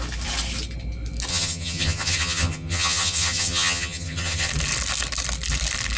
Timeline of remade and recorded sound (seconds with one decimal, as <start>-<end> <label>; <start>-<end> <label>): 0.0-1.3 recorded; 1.3-4.5 remade; 4.5-6.0 recorded